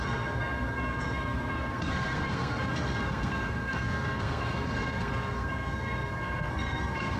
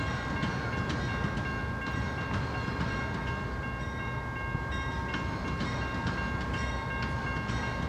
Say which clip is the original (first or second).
second